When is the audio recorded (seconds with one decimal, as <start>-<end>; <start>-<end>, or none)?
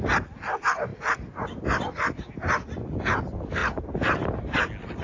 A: 0.0-5.0